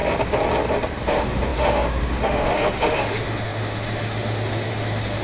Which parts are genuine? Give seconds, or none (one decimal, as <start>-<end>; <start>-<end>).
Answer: 0.0-1.1